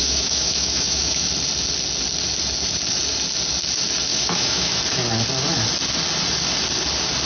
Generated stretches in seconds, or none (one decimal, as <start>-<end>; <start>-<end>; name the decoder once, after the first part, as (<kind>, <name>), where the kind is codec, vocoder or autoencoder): 0.0-1.3 (autoencoder, DAC-VAE); 4.1-4.8